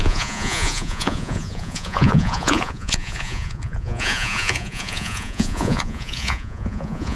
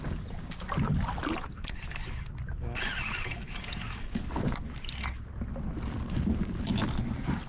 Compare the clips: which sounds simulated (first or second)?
first